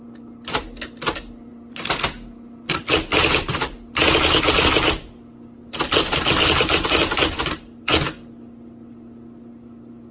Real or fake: real